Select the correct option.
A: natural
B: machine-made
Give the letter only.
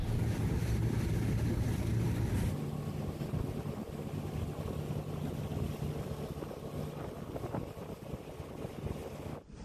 A